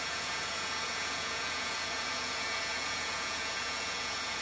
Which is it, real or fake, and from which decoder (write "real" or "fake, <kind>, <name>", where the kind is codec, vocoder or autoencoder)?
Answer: fake, vocoder, Vocos